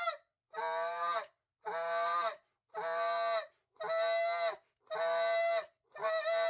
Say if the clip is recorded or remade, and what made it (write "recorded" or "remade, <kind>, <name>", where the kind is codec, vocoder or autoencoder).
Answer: recorded